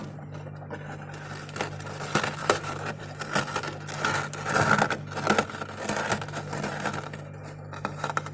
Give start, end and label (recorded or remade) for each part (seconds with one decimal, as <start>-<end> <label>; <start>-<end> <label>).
0.0-2.4 recorded; 2.4-3.0 remade; 3.0-8.3 recorded